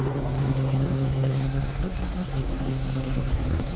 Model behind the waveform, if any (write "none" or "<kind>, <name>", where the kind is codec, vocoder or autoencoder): codec, SNAC